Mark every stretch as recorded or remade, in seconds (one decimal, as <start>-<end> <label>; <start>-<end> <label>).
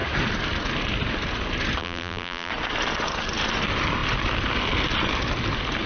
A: 0.0-1.8 recorded; 1.8-2.5 remade; 2.5-5.9 recorded